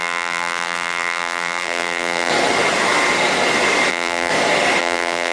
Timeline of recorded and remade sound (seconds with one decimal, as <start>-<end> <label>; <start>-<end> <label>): 0.0-2.3 remade; 2.3-3.9 recorded; 3.9-4.3 remade; 4.3-4.8 recorded; 4.8-5.3 remade